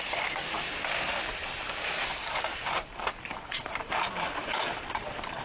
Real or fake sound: fake